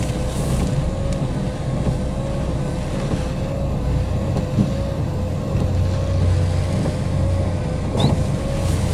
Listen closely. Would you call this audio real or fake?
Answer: real